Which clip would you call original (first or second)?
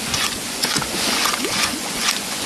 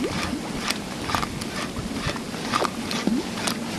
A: second